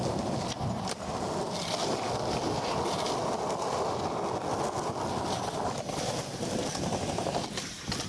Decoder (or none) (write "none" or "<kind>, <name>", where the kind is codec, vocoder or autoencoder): none